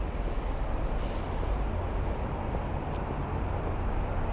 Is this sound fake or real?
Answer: real